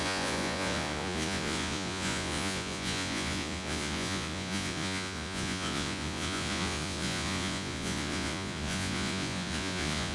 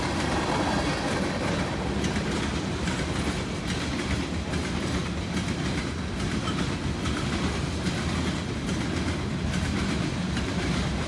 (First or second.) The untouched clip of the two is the second